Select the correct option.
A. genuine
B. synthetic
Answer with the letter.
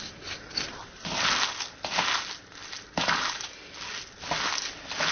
A